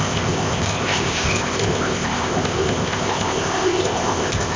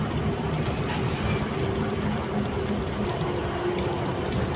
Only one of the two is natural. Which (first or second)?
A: second